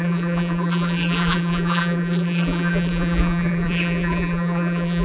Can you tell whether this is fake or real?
fake